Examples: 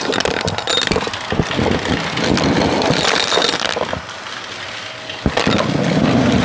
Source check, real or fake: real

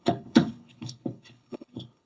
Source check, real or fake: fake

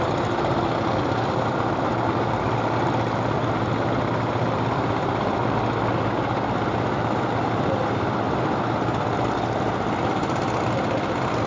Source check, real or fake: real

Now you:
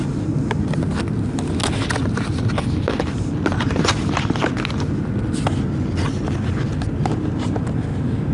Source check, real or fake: real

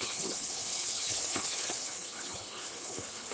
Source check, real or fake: fake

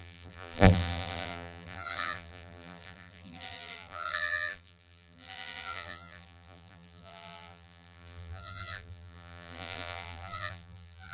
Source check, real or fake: fake